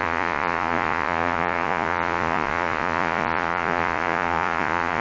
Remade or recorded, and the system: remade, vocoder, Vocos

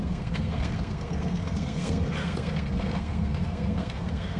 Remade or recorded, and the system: remade, codec, SNAC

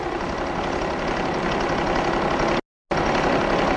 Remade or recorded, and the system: recorded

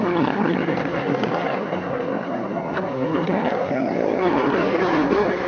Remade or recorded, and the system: remade, codec, SNAC